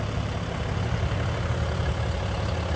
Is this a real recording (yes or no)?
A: yes